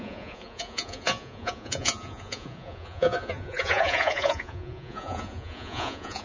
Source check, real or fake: fake